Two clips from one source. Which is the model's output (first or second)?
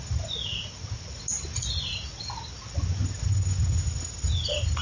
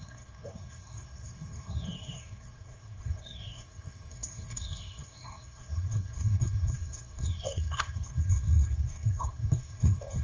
second